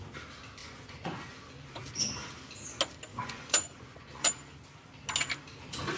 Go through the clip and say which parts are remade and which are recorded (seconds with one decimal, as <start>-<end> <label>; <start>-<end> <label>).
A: 0.0-0.6 recorded; 0.6-1.7 remade; 1.7-3.1 recorded; 3.1-4.3 remade; 4.3-6.0 recorded